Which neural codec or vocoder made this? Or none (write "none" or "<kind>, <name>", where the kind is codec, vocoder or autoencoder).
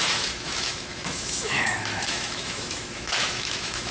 autoencoder, DAC-VAE